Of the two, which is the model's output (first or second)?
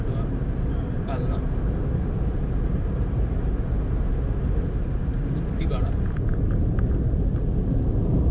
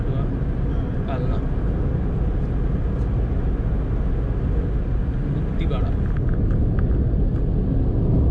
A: first